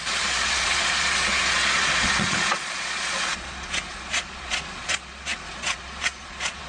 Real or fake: fake